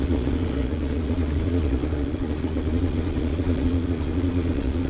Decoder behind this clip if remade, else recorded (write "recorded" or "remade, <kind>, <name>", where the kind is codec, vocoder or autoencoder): remade, vocoder, Vocos